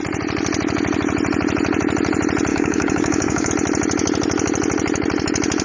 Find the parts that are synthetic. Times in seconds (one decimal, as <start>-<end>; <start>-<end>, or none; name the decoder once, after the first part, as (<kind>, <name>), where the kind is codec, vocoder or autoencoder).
2.5-3.5 (codec, DAC)